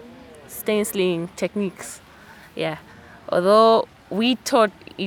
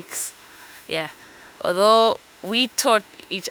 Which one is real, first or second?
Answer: first